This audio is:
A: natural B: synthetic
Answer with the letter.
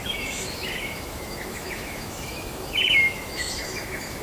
B